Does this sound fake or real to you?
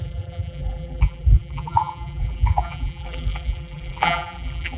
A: fake